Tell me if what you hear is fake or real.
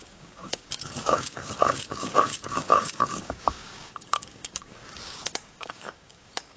fake